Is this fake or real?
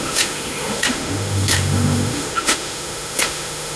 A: fake